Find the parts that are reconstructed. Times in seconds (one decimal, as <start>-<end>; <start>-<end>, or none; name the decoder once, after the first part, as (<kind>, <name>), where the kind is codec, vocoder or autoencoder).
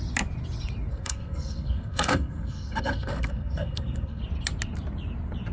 0.9-4.2 (codec, SNAC)